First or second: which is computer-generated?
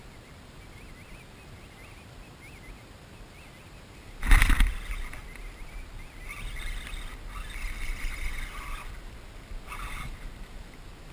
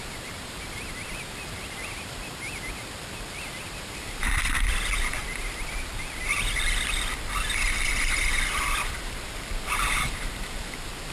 second